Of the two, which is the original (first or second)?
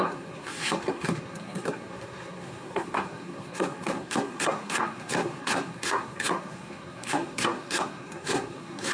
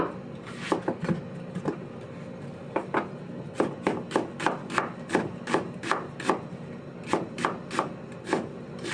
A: second